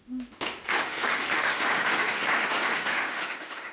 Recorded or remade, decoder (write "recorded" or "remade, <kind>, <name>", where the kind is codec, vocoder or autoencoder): remade, autoencoder, DAC-VAE